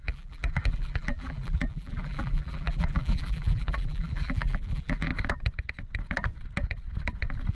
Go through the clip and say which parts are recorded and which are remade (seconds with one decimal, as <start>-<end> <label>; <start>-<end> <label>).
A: 0.0-5.1 remade; 5.1-7.5 recorded